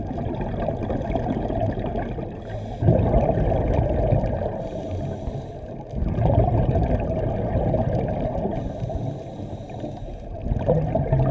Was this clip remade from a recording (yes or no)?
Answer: no